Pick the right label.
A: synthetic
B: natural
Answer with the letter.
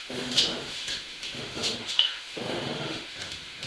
A